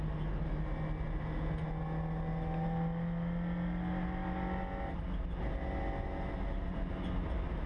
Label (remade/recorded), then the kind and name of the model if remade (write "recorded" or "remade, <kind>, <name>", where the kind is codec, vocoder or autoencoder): recorded